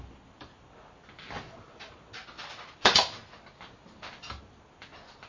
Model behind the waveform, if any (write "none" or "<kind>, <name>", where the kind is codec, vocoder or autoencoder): none